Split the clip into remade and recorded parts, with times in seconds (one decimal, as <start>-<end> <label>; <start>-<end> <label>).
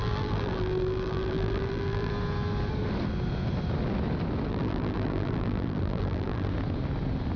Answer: 0.0-2.1 remade; 2.1-4.5 recorded; 4.5-6.5 remade; 6.5-7.4 recorded